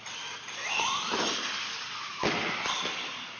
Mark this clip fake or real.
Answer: real